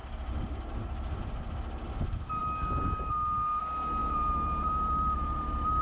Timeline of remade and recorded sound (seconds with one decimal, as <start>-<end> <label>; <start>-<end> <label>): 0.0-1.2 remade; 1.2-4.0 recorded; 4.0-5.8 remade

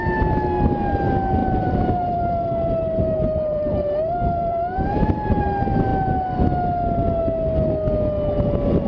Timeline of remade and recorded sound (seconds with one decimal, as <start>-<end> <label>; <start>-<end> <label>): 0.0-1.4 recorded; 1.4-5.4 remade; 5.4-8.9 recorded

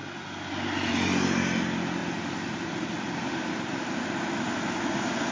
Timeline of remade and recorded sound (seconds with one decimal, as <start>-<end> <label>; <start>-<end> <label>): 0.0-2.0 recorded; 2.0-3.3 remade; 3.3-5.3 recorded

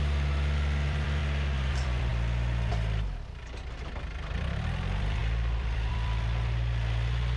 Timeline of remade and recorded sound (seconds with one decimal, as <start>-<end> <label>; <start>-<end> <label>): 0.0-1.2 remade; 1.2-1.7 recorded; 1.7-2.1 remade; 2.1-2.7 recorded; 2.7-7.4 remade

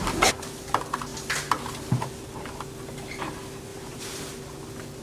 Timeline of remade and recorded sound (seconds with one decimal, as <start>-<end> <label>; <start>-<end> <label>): 0.0-3.7 recorded; 3.7-4.2 remade; 4.2-5.0 recorded

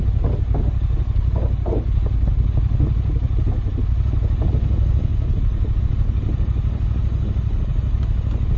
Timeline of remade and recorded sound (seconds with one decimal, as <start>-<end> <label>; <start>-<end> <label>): 0.0-5.1 recorded; 5.1-5.8 remade; 5.8-8.6 recorded

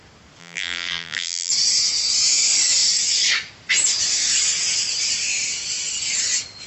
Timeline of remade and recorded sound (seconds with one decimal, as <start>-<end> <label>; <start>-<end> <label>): 0.0-0.4 recorded; 0.4-1.5 remade; 1.5-6.7 recorded